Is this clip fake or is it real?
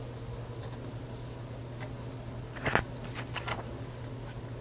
real